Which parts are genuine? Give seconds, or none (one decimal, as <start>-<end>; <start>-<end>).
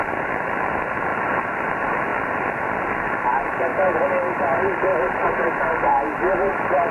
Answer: 1.1-1.7; 2.1-3.1; 3.7-4.4